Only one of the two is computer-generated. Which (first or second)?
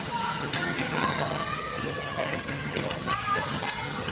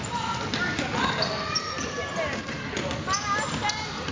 first